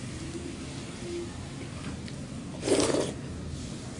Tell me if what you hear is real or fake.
real